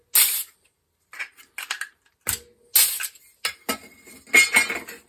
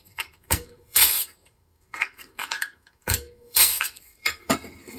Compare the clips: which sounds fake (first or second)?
second